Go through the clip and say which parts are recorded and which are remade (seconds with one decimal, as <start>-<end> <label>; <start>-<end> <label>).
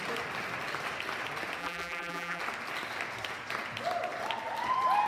0.0-1.6 recorded; 1.6-2.4 remade; 2.4-5.1 recorded